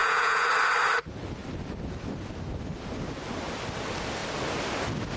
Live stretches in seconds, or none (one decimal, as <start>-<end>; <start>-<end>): 0.5-5.2